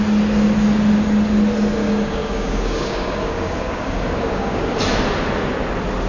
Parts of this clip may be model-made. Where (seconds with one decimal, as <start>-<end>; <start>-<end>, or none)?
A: 1.8-4.8